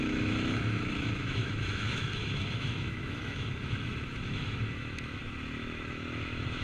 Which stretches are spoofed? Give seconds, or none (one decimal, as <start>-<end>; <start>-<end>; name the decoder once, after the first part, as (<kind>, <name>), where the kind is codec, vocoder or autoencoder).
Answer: 0.0-6.6 (autoencoder, DAC-VAE)